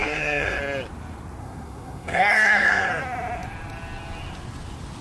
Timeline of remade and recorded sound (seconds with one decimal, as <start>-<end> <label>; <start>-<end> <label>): 0.0-0.6 remade; 0.6-1.4 recorded; 1.4-2.9 remade; 2.9-5.0 recorded